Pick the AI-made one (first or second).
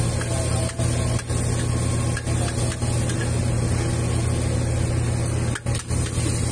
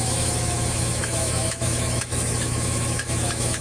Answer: second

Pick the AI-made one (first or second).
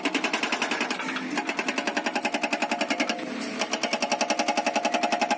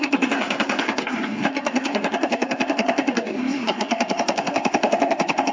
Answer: second